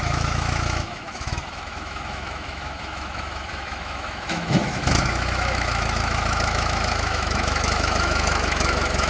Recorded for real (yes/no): no